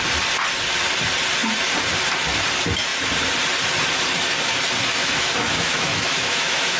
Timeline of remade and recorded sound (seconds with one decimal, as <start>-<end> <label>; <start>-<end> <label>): 0.0-5.0 recorded; 5.0-6.8 remade